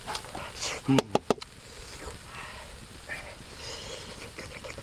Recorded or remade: recorded